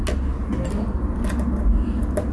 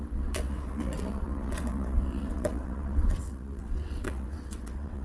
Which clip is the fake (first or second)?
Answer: second